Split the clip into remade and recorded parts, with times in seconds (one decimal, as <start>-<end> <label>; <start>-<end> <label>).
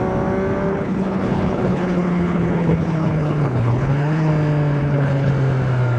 0.0-0.7 recorded; 0.7-4.3 remade; 4.3-4.8 recorded; 4.8-5.3 remade; 5.3-6.0 recorded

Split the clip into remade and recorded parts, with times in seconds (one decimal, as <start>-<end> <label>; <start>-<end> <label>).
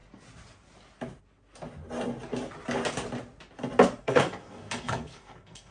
0.0-4.0 recorded; 4.0-5.7 remade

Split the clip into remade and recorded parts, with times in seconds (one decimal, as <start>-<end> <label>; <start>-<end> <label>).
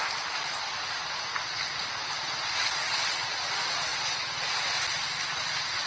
0.0-5.9 recorded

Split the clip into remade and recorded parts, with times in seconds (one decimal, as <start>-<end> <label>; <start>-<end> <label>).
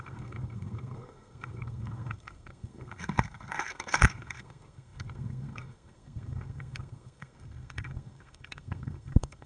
0.0-9.5 remade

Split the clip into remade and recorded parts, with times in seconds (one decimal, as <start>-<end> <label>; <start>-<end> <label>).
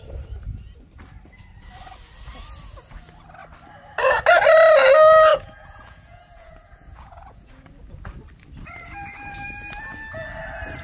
0.0-5.3 recorded; 5.3-7.5 remade; 7.5-10.8 recorded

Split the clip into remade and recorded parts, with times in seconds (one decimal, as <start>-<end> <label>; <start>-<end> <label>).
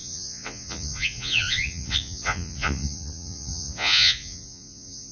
0.0-5.1 remade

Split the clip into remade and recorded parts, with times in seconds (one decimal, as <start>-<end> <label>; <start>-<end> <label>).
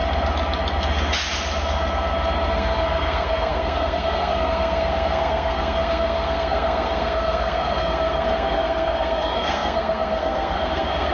0.0-2.5 recorded; 2.5-11.1 remade